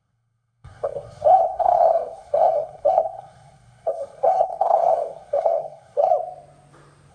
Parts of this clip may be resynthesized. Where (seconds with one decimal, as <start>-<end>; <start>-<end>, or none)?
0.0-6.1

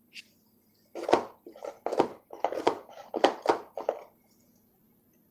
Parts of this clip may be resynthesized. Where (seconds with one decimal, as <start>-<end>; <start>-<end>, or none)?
2.1-3.1

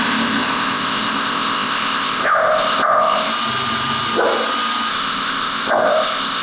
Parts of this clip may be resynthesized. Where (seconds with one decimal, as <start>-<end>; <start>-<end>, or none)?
0.0-3.3; 4.9-6.4

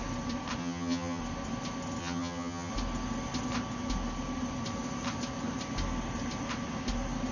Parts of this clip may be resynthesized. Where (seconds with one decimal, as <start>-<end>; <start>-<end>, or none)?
0.6-1.2; 2.0-2.7

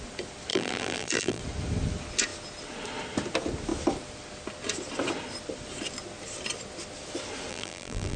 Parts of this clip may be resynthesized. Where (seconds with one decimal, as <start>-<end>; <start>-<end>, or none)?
0.5-1.4; 7.5-8.2